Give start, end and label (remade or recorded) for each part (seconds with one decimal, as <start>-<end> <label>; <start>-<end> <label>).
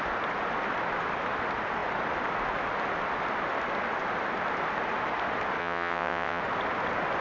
0.0-5.6 recorded; 5.6-6.4 remade; 6.4-7.2 recorded